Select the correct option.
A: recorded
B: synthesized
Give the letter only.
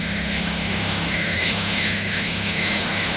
B